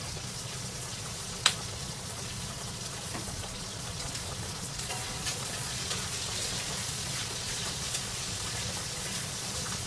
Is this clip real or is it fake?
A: fake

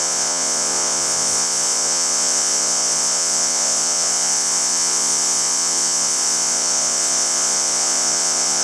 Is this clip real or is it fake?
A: fake